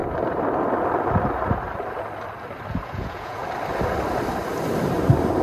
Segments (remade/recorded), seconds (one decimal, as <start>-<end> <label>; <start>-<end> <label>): 0.0-2.7 recorded; 2.7-3.4 remade; 3.4-5.4 recorded